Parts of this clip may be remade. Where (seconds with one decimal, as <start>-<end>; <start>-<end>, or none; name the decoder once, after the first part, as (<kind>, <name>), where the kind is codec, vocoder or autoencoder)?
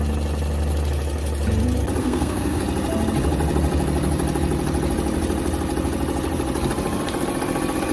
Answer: 2.0-2.6 (codec, SNAC)